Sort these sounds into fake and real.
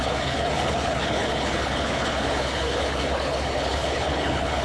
fake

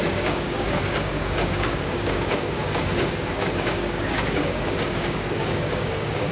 fake